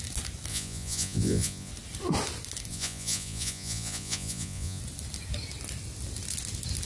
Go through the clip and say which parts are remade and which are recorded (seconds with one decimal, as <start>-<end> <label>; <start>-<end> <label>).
0.0-0.5 recorded; 0.5-1.7 remade; 1.7-2.7 recorded; 2.7-4.8 remade; 4.8-6.8 recorded